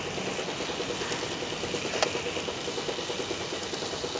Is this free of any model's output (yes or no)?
yes